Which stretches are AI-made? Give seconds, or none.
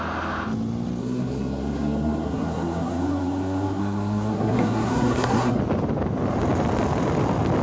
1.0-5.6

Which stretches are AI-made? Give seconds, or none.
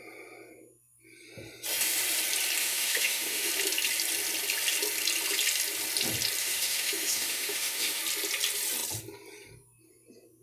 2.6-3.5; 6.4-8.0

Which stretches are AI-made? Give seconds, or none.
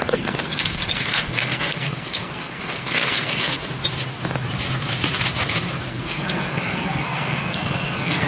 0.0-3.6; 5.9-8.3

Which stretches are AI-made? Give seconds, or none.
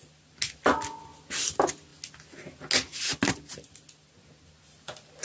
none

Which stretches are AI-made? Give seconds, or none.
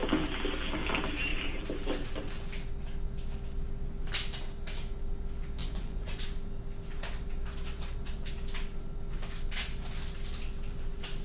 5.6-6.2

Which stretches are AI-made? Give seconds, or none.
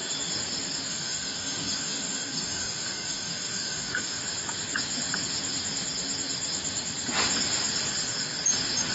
0.9-4.2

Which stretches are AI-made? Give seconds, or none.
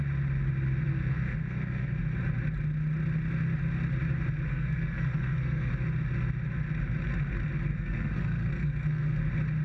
0.9-2.0; 4.5-5.7; 7.7-9.2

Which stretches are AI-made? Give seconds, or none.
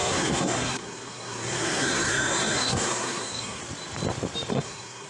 0.0-3.6; 4.5-5.1